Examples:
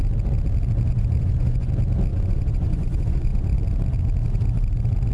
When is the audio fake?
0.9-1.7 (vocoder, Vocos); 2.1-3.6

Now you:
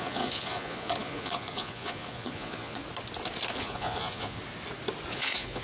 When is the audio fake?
0.0-2.8 (vocoder, Vocos); 3.6-4.4; 5.1-5.6

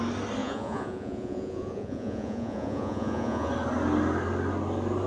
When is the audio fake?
0.4-3.5 (vocoder, Vocos)